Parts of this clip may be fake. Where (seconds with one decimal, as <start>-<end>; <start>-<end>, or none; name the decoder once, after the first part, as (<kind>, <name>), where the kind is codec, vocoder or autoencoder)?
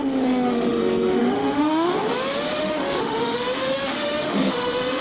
0.0-1.9 (autoencoder, DAC-VAE); 2.6-5.0